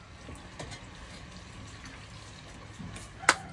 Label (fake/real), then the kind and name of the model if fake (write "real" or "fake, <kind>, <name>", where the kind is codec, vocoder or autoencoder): real